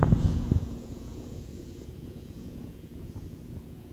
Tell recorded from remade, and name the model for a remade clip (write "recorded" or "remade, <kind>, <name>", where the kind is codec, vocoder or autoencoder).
remade, vocoder, Vocos